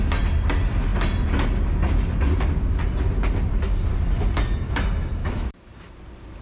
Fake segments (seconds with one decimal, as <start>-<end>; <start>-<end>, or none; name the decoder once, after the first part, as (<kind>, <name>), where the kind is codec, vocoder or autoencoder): 5.2-5.7 (autoencoder, DAC-VAE)